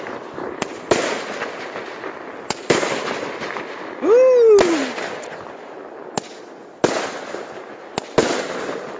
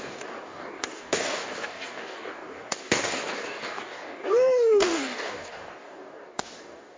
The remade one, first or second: second